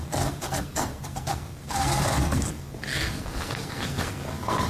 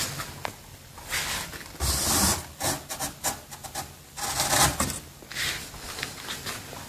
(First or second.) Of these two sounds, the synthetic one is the first